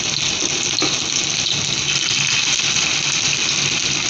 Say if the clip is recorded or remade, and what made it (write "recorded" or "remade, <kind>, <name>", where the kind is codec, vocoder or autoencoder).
recorded